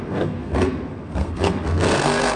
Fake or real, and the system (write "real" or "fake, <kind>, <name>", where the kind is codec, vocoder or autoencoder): fake, codec, SNAC